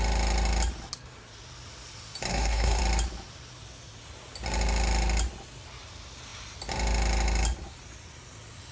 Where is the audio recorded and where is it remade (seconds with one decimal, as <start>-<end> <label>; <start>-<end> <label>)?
0.0-2.3 recorded; 2.3-2.8 remade; 2.8-8.7 recorded